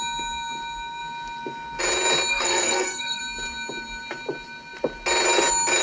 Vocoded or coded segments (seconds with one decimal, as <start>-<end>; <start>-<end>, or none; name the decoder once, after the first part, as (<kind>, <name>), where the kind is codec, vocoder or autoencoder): 2.3-3.2 (codec, SNAC)